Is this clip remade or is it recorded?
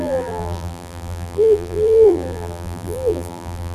remade